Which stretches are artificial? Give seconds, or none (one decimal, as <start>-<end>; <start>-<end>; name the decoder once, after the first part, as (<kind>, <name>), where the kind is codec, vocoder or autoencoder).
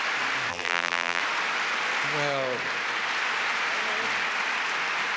0.5-1.2 (vocoder, BigVGAN v2)